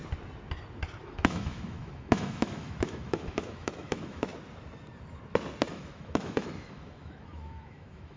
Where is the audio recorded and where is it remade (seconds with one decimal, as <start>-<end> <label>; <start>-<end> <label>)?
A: 0.0-1.0 recorded; 1.0-4.3 remade; 4.3-5.7 recorded; 5.7-8.2 remade